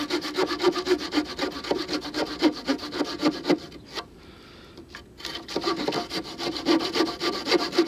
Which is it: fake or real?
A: real